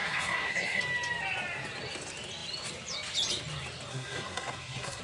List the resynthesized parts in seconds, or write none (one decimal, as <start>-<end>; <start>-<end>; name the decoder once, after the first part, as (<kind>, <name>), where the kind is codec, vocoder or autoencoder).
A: 0.0-0.8 (codec, SNAC); 3.9-5.0

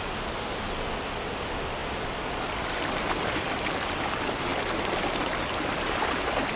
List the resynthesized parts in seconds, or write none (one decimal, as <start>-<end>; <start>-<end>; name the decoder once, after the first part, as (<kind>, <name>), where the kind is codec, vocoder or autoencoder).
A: none